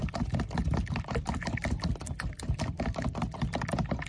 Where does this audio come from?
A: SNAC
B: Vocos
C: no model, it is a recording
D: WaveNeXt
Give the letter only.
C